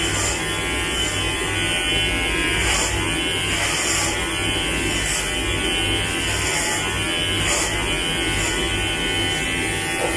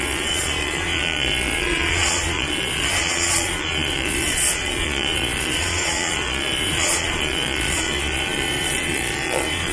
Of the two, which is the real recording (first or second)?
first